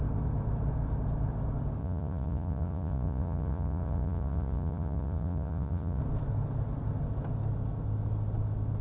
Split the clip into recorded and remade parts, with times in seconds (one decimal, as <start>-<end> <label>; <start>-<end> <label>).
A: 0.0-1.8 recorded; 1.8-6.0 remade; 6.0-8.8 recorded